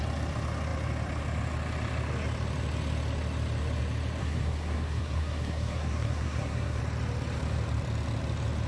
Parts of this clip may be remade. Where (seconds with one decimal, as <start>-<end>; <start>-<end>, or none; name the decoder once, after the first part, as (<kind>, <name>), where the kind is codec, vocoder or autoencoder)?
4.2-6.8 (codec, SNAC)